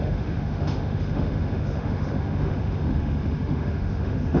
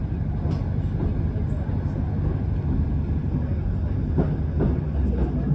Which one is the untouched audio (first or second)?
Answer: second